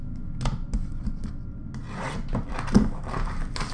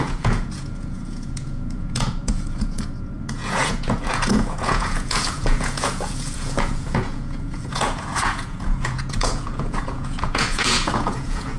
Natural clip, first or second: first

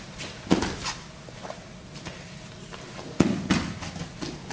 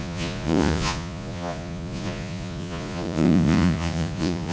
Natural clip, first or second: first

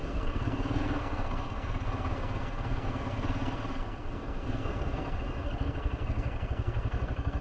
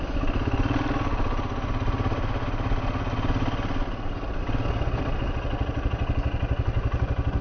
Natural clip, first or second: second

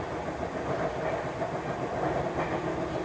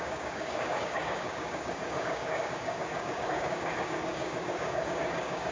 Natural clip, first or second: first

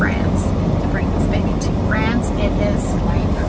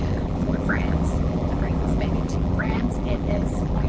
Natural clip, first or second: first